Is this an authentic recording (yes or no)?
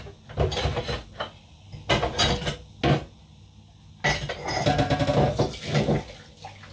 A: yes